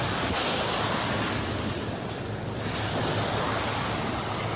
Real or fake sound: real